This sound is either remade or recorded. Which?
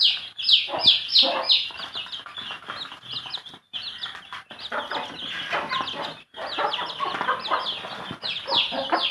recorded